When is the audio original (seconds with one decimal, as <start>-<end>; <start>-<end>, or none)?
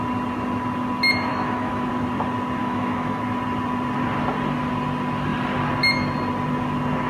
0.0-1.3; 1.9-2.6; 3.2-7.1